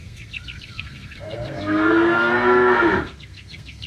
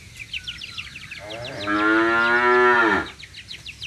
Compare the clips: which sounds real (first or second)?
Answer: second